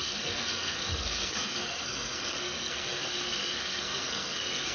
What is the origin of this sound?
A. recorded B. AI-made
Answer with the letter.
B